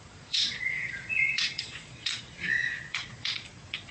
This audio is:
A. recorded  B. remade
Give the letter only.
B